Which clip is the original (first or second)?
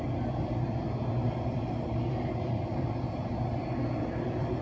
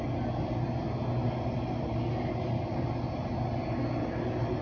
second